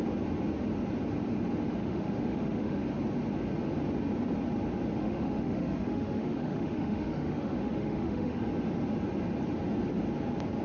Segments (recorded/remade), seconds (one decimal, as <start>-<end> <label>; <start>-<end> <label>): 0.0-1.8 recorded; 1.8-2.8 remade; 2.8-5.0 recorded; 5.0-8.4 remade; 8.4-10.6 recorded